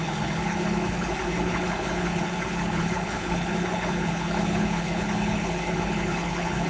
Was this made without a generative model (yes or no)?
no